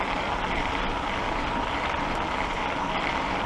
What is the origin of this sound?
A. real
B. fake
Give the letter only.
B